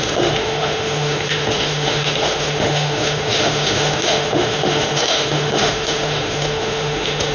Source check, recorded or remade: remade